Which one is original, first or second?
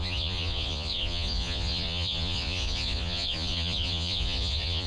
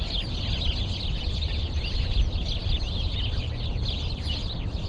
second